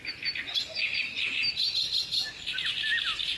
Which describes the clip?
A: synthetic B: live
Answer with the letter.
B